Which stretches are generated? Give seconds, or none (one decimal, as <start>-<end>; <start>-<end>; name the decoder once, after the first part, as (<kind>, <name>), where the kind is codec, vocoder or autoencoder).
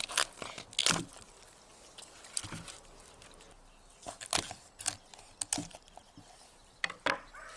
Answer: none